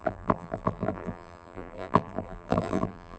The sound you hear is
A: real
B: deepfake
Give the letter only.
B